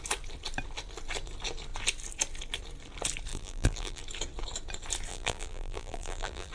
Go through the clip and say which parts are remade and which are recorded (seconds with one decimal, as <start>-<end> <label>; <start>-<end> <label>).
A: 0.0-3.3 recorded; 3.3-4.0 remade; 4.0-5.1 recorded; 5.1-6.5 remade